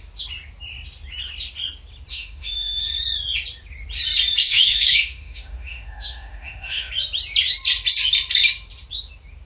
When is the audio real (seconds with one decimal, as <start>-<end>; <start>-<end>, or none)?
0.0-2.1; 2.8-4.4; 6.9-9.5